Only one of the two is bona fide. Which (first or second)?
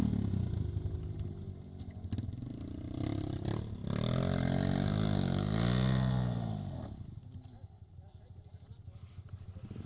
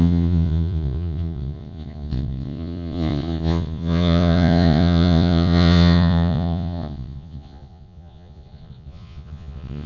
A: first